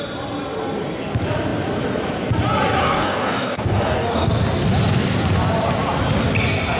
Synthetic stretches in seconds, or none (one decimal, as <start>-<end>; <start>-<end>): 2.8-4.3